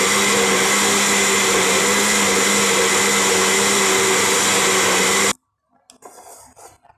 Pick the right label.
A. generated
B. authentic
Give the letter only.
B